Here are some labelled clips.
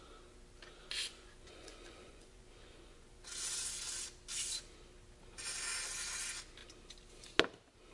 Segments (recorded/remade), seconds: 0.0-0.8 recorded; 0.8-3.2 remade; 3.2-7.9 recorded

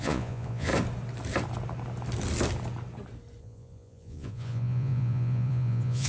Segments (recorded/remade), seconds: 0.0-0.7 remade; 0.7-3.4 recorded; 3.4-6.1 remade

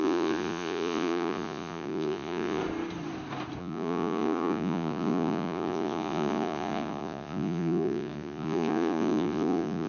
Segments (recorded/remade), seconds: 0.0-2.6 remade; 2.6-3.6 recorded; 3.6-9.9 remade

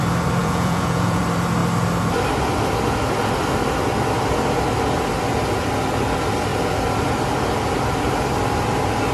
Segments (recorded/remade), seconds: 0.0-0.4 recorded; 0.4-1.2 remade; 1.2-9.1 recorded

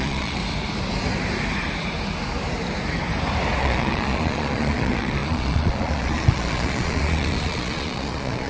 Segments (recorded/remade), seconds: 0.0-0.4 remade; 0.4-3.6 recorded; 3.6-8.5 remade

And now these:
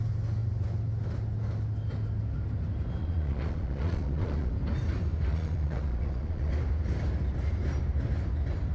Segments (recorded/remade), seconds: 0.0-3.0 recorded; 3.0-4.5 remade; 4.5-5.3 recorded; 5.3-6.5 remade; 6.5-8.7 recorded

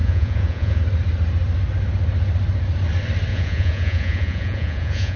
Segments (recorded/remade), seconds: 0.0-0.8 remade; 0.8-3.3 recorded; 3.3-5.2 remade